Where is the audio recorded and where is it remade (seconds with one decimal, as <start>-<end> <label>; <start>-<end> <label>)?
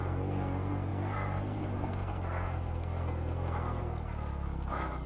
0.0-5.1 remade